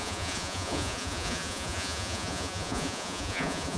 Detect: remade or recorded remade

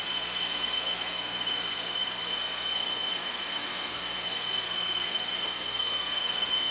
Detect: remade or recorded remade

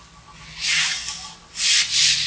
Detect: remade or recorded recorded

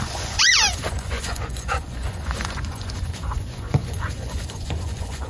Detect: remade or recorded remade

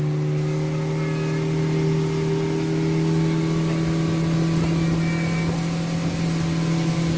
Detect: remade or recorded recorded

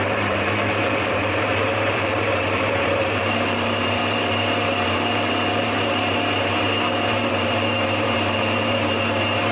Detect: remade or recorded remade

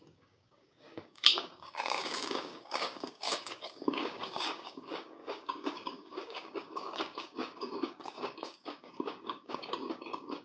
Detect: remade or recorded remade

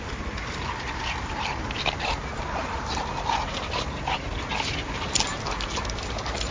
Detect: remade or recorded recorded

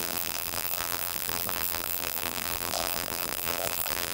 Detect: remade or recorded remade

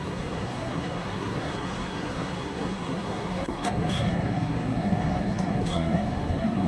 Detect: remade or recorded remade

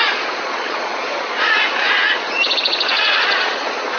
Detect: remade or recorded remade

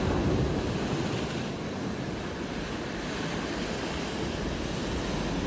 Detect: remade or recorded recorded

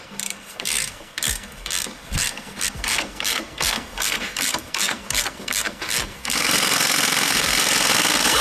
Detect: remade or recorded remade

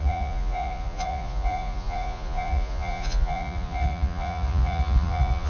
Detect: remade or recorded remade